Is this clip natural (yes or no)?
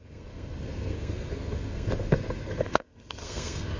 no